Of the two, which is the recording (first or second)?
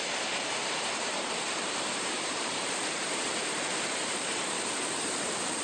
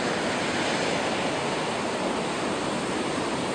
second